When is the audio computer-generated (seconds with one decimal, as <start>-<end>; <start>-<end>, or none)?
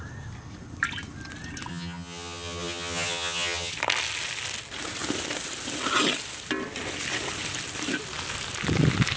1.7-3.7